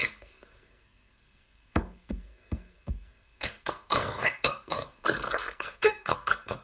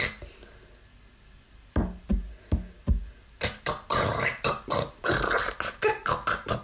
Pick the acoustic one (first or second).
second